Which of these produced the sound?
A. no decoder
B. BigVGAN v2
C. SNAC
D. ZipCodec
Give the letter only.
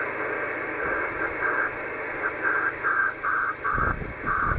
A